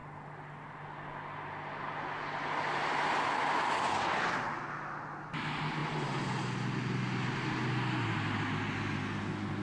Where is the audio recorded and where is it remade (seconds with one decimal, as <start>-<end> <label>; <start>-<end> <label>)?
0.0-9.6 recorded